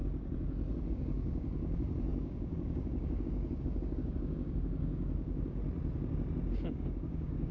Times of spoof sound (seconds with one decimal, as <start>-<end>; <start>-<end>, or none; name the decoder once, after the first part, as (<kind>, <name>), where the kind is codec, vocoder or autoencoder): 0.9-5.6 (codec, DAC); 6.5-7.5